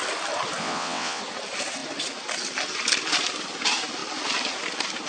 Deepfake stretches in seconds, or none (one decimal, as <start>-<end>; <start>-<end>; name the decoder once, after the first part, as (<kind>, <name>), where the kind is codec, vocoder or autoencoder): 0.6-1.2 (vocoder, WaveNeXt)